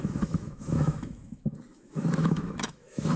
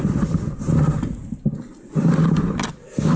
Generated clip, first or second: first